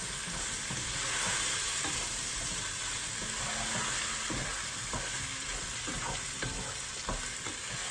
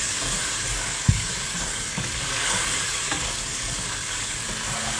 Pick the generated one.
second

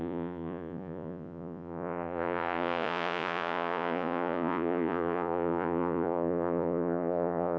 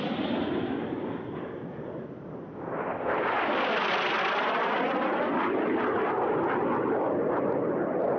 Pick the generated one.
first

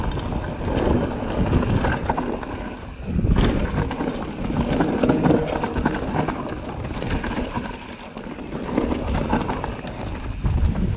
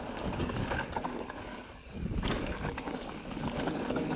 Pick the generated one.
second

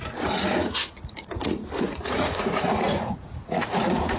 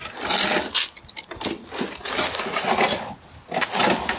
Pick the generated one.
first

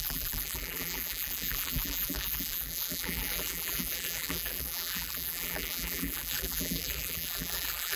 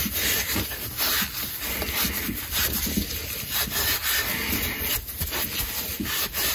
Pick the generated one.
first